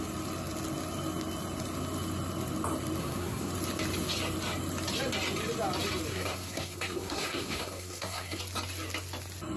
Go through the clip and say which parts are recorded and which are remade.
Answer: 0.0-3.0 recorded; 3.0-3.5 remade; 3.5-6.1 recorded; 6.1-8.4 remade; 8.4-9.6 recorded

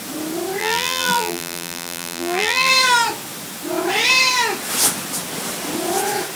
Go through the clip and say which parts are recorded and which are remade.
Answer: 0.0-0.6 recorded; 0.6-2.7 remade; 2.7-6.4 recorded